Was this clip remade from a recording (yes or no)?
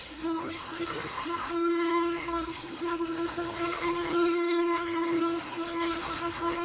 yes